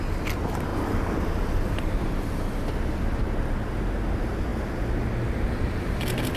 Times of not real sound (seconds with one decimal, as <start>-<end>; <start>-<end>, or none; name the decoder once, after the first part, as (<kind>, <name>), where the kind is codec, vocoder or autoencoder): none